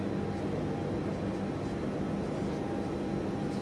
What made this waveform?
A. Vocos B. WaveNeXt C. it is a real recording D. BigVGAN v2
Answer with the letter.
C